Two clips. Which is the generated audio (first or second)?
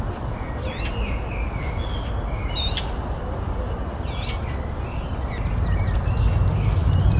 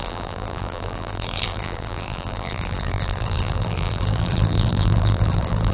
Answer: second